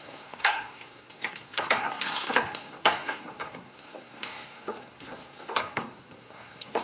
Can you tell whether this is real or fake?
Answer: fake